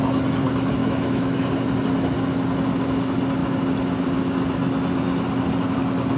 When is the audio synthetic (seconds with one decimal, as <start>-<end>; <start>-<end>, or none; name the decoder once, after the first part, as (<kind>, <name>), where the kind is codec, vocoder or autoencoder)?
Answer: 0.8-1.5 (autoencoder, DAC-VAE)